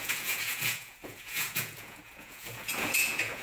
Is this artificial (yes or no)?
yes